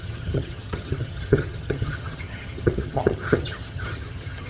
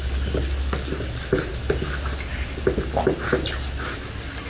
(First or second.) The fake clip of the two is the first